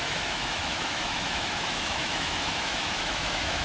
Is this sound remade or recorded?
remade